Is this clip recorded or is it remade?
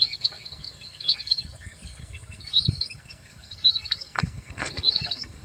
remade